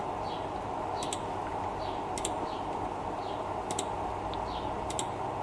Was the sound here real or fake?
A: real